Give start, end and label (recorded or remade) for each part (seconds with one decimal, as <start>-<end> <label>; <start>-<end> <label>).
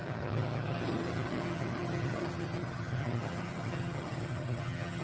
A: 0.0-5.0 remade